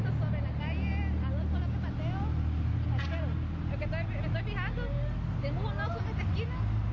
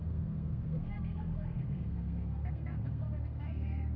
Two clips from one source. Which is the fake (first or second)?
second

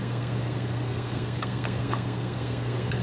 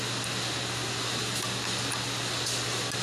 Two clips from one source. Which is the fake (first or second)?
first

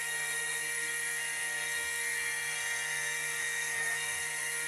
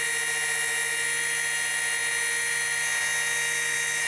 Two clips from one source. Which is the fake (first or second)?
first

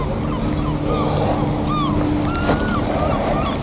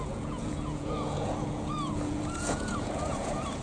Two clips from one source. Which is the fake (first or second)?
second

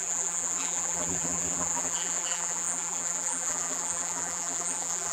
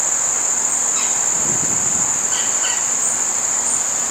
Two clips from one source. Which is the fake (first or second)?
first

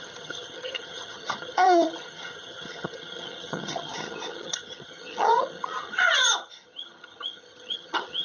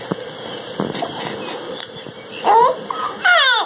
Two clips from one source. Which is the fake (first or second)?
first